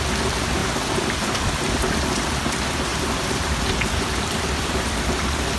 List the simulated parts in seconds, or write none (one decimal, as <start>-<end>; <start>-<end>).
2.9-3.6

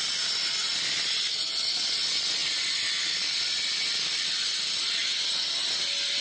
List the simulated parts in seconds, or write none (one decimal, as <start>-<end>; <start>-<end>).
2.4-5.0